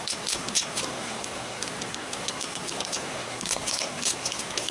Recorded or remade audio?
remade